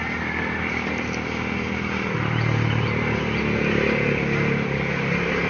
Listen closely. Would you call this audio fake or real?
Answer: real